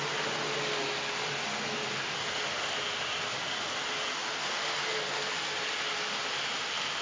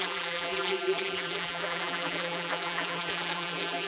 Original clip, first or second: first